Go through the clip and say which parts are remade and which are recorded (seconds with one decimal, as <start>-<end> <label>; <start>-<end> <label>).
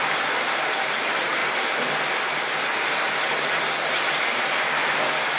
0.0-1.4 remade; 1.4-3.9 recorded; 3.9-5.4 remade